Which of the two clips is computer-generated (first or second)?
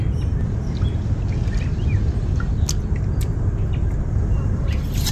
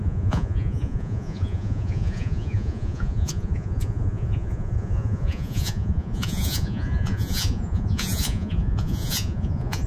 second